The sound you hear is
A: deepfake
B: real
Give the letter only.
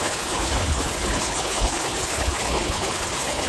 A